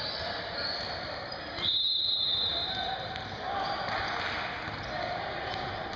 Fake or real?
real